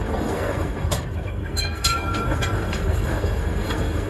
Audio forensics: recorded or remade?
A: remade